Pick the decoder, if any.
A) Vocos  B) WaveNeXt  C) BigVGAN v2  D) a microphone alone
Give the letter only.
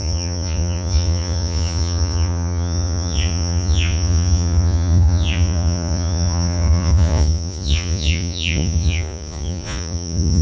A